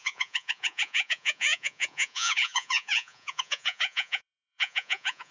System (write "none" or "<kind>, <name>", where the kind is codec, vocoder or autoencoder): vocoder, Vocos